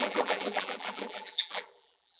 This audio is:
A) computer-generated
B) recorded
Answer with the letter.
A